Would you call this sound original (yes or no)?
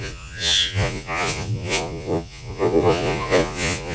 no